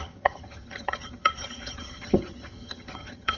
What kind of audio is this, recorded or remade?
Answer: remade